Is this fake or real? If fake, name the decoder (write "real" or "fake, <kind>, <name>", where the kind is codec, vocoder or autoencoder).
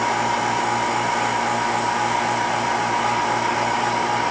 real